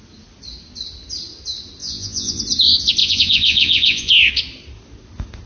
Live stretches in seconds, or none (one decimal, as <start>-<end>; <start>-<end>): 0.0-1.8; 2.4-3.0; 4.1-5.5